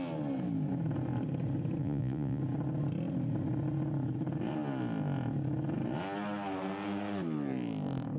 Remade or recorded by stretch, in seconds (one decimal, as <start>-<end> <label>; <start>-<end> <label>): 0.0-1.8 recorded; 1.8-2.4 remade; 2.4-8.2 recorded

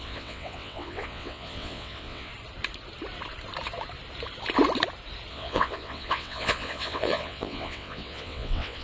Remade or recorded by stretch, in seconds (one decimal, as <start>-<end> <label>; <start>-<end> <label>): 0.0-2.3 remade; 2.3-5.3 recorded; 5.3-8.8 remade

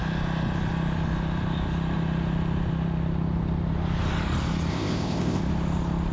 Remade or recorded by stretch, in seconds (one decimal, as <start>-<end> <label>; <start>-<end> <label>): 0.0-4.7 recorded; 4.7-5.4 remade; 5.4-6.1 recorded